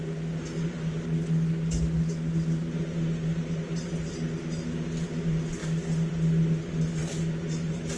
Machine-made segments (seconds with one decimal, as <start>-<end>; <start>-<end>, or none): none